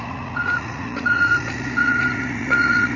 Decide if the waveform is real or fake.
fake